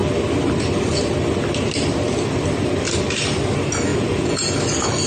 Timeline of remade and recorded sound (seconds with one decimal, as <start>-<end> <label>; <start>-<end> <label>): 0.0-3.9 recorded; 3.9-4.5 remade; 4.5-5.1 recorded